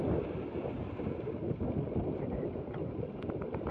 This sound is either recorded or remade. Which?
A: recorded